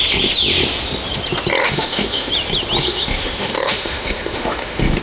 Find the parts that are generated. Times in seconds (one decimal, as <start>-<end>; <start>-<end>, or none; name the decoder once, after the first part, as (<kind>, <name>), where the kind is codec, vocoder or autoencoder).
1.6-2.3 (autoencoder, DAC-VAE); 2.8-5.0